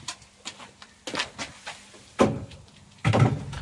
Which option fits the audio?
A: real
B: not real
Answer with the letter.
A